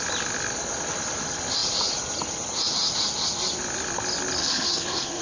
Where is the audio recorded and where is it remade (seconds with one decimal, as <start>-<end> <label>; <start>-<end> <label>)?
0.0-4.4 recorded; 4.4-5.2 remade